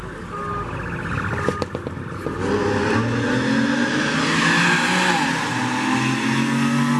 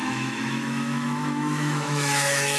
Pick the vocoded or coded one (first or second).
second